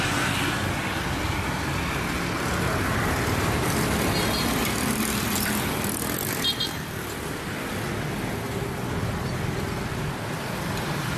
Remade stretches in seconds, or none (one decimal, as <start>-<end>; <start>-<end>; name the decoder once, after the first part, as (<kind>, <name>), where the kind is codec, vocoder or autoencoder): 4.6-7.9 (vocoder, BigVGAN v2)